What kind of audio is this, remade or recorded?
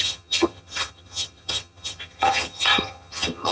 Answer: remade